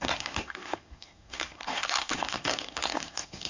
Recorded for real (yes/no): no